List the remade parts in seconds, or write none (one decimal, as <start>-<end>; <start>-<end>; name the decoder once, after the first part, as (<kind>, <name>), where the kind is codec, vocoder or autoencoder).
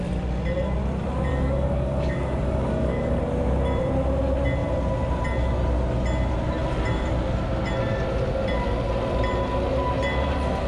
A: 1.3-3.2 (codec, DAC)